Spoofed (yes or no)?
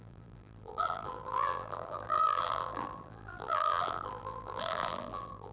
yes